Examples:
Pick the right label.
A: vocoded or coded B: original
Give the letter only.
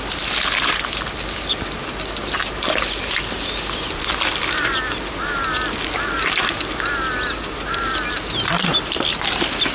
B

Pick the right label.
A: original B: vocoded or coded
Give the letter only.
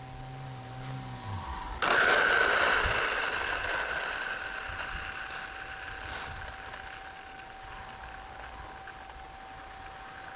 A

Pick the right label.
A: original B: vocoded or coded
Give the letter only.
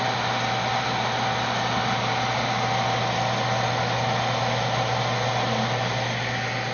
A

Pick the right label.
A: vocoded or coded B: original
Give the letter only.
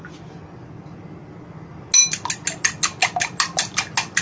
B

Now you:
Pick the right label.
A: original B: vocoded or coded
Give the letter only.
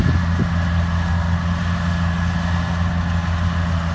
A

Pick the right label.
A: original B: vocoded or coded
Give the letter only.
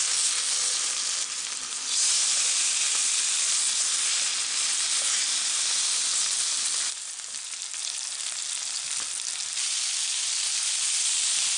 A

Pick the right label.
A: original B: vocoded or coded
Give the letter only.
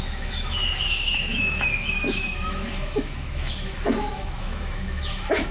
B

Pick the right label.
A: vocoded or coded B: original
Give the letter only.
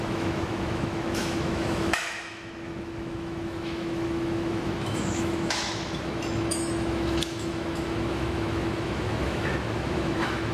A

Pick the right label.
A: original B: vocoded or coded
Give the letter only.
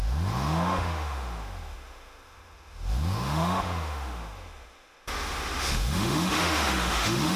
B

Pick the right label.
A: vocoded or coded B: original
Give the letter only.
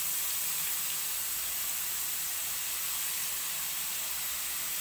B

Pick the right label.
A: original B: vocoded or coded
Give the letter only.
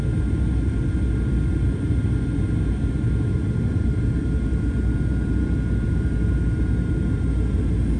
A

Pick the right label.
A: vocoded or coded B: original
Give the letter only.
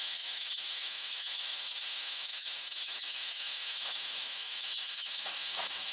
A